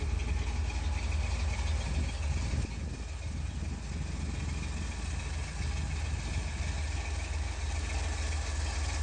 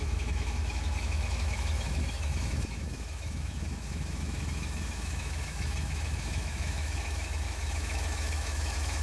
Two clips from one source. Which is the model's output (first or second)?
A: second